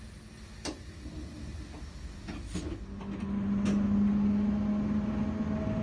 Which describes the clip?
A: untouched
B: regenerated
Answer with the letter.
A